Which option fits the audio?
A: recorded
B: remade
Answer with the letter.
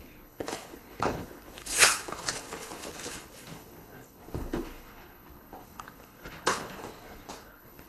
B